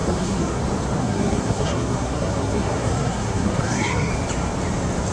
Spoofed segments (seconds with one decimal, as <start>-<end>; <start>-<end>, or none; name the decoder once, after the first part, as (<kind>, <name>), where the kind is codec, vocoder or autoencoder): 0.0-0.6 (codec, SNAC); 1.0-4.1